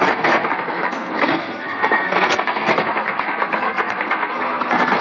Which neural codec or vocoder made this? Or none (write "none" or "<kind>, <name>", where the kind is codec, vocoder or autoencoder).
codec, SNAC